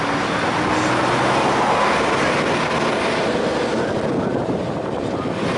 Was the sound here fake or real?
real